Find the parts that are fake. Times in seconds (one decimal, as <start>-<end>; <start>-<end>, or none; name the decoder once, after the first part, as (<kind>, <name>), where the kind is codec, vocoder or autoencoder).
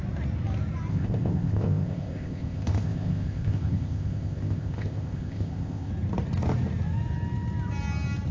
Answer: 0.9-5.9 (codec, ZipCodec)